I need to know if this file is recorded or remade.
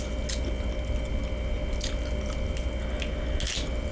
recorded